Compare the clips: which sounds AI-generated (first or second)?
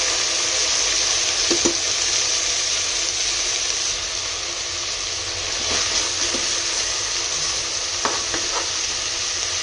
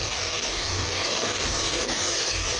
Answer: second